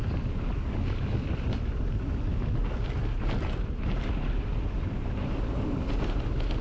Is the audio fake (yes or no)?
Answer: no